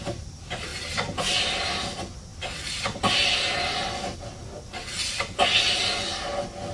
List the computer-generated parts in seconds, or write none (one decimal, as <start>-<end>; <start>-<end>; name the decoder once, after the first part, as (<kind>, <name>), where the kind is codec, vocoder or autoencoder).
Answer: none